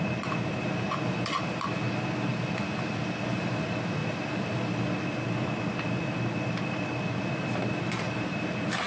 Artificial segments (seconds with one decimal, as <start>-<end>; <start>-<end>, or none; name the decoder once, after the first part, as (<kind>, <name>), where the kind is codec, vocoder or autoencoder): none